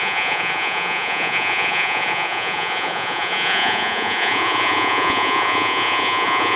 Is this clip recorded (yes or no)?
no